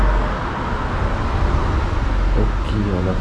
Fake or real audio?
real